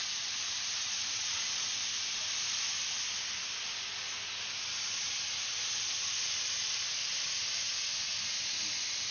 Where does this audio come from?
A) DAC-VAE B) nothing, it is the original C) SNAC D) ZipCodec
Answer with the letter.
B